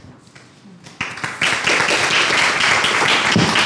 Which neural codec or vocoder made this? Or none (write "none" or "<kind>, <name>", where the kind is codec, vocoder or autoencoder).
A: none